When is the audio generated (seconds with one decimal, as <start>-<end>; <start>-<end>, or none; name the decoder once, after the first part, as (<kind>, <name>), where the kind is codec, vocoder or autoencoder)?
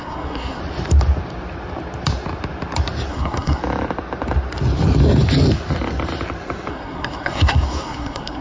0.0-0.6 (codec, SNAC); 3.1-3.6; 6.7-8.4